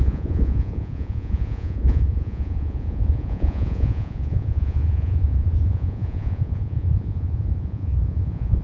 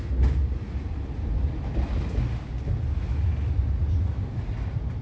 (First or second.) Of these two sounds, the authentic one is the second